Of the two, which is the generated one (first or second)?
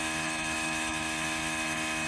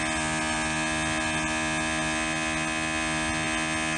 first